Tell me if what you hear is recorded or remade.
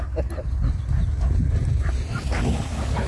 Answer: recorded